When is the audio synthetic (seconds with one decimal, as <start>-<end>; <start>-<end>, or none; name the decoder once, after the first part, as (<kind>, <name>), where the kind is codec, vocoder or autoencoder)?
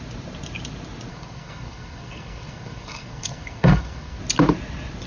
1.1-4.2 (codec, SNAC)